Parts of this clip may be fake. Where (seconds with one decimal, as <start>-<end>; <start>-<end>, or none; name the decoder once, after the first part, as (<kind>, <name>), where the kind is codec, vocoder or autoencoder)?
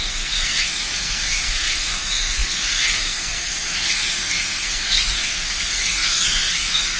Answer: 0.0-7.0 (codec, SNAC)